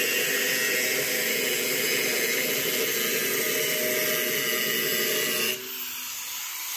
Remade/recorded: recorded